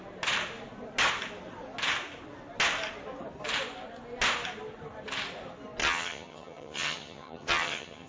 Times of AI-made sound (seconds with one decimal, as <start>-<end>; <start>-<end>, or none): 5.8-8.1